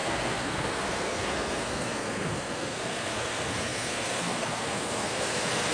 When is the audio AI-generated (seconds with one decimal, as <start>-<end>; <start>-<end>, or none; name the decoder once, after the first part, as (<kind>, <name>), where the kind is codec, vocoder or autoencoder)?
0.0-5.7 (codec, SNAC)